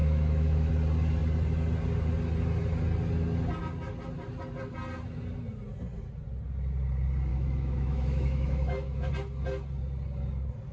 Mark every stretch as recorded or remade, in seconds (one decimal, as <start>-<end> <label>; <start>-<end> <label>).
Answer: 0.0-0.7 remade; 0.7-7.3 recorded; 7.3-9.1 remade; 9.1-10.7 recorded